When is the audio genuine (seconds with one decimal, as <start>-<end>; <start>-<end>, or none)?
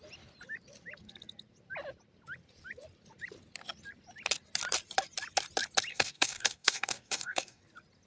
0.0-5.9; 7.6-8.1